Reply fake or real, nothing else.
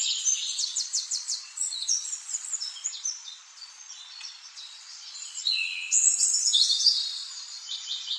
fake